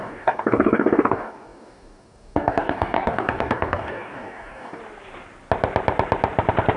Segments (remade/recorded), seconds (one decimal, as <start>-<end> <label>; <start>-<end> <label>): 0.0-4.8 remade; 4.8-6.8 recorded